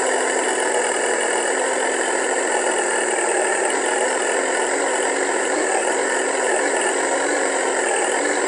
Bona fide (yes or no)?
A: yes